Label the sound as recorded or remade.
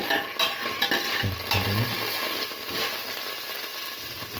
recorded